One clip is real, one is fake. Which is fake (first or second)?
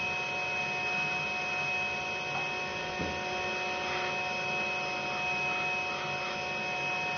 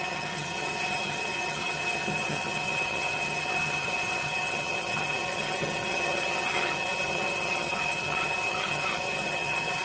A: second